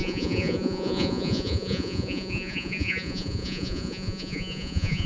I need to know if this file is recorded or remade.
remade